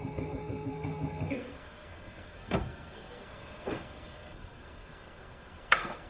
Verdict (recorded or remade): remade